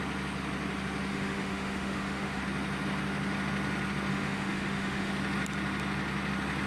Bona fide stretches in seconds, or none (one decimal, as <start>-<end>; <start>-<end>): 0.0-1.1; 2.4-4.1; 5.1-6.7